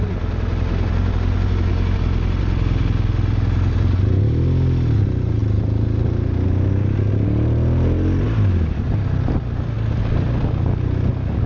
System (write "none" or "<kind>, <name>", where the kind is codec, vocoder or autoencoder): none